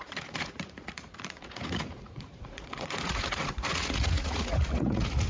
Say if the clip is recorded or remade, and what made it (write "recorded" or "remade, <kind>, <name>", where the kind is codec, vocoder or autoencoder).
remade, vocoder, Vocos